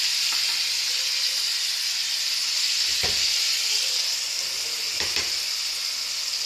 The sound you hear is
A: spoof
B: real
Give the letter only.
B